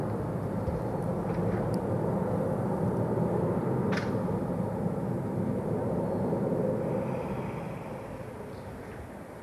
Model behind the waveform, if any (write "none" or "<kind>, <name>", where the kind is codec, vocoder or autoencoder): none